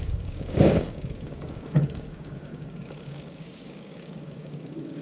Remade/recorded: remade